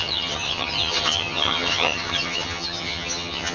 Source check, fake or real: fake